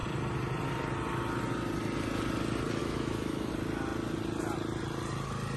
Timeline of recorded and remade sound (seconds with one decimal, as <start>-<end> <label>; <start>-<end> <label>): 0.0-2.8 recorded; 2.8-3.5 remade; 3.5-5.6 recorded